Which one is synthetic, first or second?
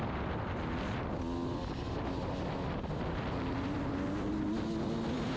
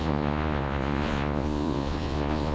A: second